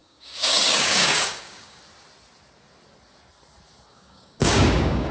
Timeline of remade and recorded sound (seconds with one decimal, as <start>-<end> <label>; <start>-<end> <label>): 0.0-1.8 remade; 1.8-3.9 recorded; 3.9-5.1 remade